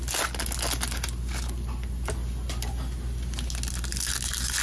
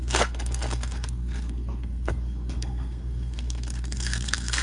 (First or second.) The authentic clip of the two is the first